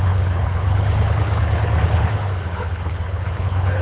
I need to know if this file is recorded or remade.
remade